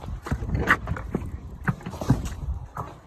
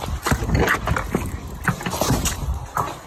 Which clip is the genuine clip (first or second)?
second